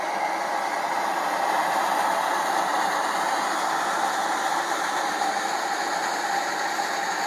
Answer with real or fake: real